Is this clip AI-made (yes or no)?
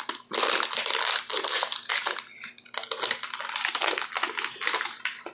no